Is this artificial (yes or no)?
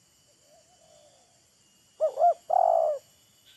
no